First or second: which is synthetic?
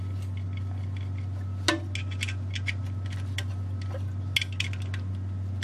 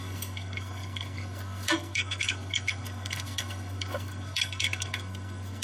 second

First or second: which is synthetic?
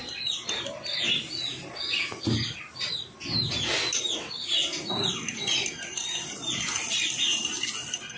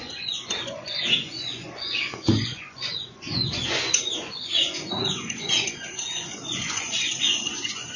second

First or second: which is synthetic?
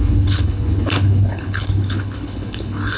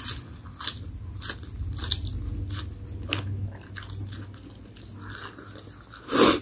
first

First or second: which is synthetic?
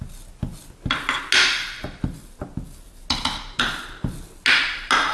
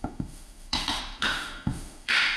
second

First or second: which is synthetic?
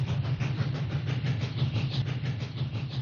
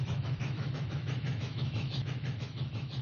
second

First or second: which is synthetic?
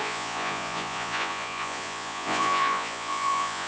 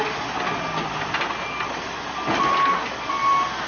first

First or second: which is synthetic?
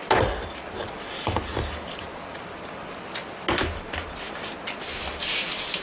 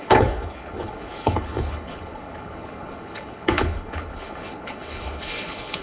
second